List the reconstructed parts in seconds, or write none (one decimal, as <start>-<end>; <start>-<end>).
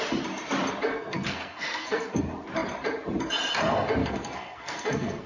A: 0.9-2.2; 4.0-5.3